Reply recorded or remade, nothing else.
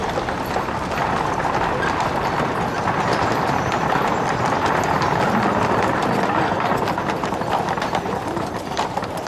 recorded